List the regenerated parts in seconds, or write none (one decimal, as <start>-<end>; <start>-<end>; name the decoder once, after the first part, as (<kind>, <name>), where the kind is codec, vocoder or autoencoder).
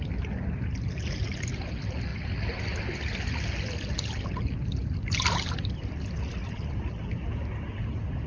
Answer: none